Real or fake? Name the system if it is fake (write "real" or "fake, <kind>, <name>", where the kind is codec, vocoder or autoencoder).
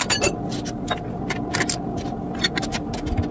real